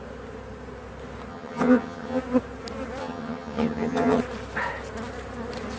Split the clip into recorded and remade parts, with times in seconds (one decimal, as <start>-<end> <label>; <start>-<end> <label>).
0.0-1.3 recorded; 1.3-2.2 remade; 2.2-3.0 recorded; 3.0-4.2 remade; 4.2-5.8 recorded